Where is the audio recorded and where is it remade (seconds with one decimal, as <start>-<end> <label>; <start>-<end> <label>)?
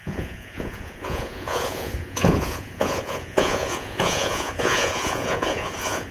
0.0-6.1 remade